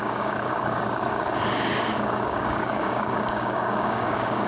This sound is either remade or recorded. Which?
remade